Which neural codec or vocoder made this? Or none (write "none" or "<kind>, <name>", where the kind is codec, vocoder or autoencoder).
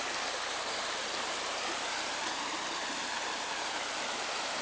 none